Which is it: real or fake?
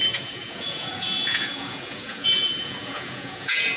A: fake